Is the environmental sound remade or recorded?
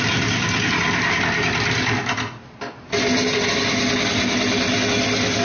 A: recorded